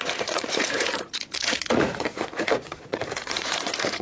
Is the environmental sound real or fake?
fake